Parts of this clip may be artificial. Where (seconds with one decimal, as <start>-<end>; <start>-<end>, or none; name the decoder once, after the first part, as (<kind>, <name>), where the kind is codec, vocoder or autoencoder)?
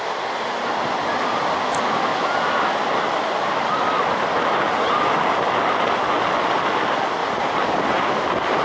7.2-7.9 (vocoder, BigVGAN v2)